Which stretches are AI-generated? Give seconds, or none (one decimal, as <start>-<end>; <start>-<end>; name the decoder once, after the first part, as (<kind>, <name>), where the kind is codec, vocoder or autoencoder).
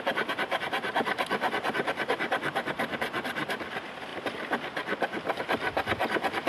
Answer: none